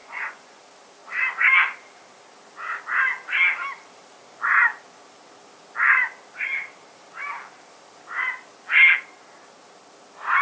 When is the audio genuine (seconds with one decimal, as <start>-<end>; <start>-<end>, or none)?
0.6-10.4